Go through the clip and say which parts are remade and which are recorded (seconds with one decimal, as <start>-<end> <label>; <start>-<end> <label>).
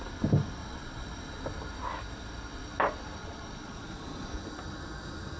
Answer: 0.0-0.6 recorded; 0.6-1.2 remade; 1.2-3.2 recorded; 3.2-4.3 remade; 4.3-5.4 recorded